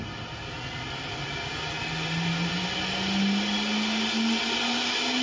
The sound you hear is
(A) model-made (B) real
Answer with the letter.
B